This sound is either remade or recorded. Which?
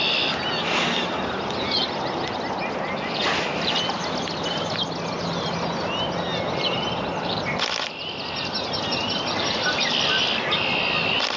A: recorded